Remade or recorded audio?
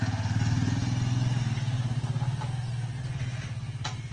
recorded